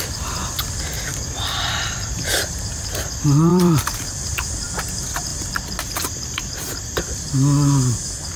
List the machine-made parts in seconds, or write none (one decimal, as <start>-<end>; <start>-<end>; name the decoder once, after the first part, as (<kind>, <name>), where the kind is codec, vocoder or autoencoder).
1.1-2.6 (vocoder, BigVGAN v2); 3.5-4.8; 5.3-7.0